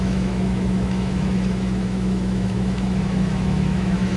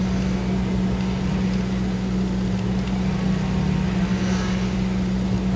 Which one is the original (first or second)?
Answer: second